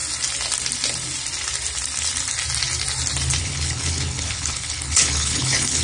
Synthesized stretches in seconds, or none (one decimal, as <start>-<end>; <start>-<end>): 3.4-5.8